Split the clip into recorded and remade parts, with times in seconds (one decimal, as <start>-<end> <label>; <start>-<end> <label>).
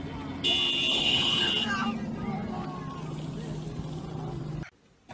0.0-0.9 recorded; 0.9-1.5 remade; 1.5-5.1 recorded